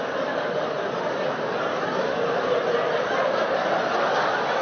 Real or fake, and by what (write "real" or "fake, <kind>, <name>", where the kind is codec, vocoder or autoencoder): real